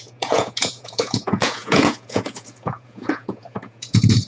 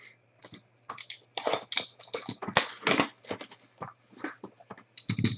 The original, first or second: second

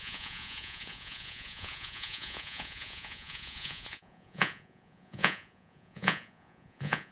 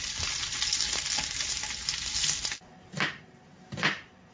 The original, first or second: second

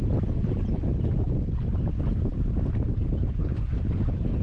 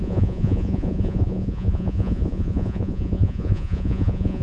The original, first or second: first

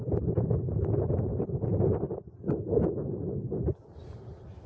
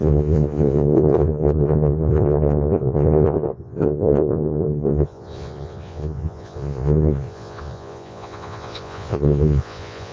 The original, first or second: first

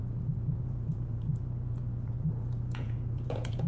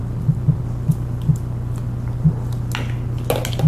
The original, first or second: second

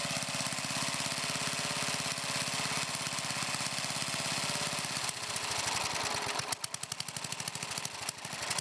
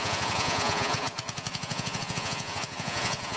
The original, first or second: first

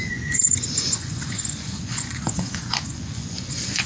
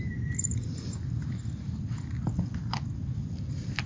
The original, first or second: second